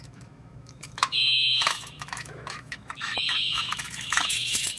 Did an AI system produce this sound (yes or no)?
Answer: yes